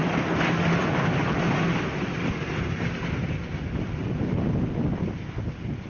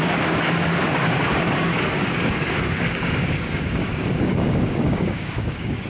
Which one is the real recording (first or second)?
first